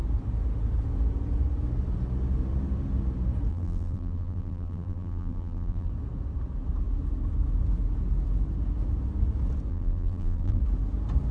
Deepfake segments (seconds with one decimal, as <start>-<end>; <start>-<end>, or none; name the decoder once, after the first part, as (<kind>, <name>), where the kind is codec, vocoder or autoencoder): 3.5-5.9 (vocoder, BigVGAN v2); 9.7-10.6